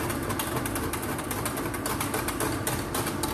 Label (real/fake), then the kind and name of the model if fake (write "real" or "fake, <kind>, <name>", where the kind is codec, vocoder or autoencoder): real